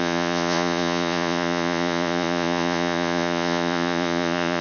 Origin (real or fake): fake